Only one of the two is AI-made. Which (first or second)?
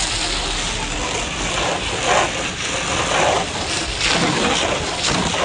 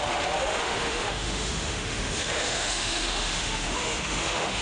second